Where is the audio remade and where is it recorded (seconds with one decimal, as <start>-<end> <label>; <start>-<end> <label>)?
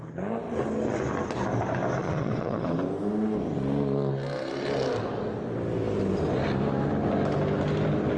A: 0.0-2.0 recorded; 2.0-2.7 remade; 2.7-8.2 recorded